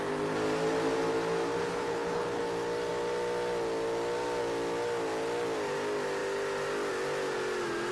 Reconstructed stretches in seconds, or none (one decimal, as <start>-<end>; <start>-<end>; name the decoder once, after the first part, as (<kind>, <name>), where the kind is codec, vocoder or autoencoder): 1.6-2.4 (codec, HILCodec)